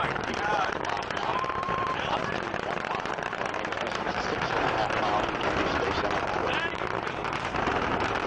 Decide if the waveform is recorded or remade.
remade